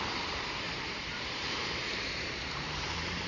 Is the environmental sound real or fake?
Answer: fake